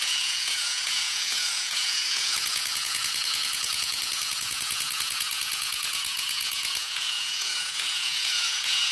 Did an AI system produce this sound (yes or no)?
yes